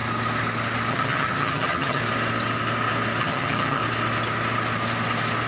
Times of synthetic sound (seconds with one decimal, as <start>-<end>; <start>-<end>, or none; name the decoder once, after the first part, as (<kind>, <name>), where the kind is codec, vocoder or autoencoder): 0.9-2.0 (vocoder, HiFi-GAN); 3.2-3.8